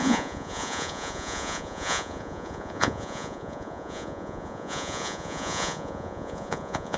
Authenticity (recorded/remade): remade